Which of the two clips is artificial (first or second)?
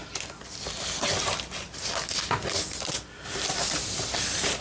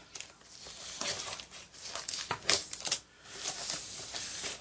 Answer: second